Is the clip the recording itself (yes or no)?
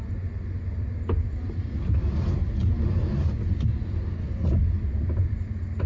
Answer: yes